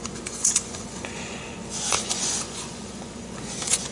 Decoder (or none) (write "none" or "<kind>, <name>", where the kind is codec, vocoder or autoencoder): vocoder, Vocos